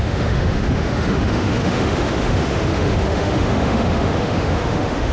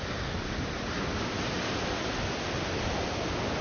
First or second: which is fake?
first